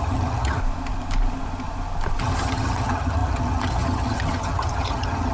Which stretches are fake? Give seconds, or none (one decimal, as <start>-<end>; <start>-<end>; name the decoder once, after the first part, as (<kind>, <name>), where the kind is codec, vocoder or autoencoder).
0.0-0.6 (vocoder, HiFi-GAN); 2.2-5.3